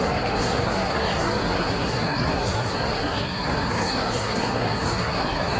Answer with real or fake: fake